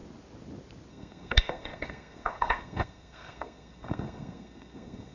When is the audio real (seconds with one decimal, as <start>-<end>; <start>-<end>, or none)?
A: 0.0-0.9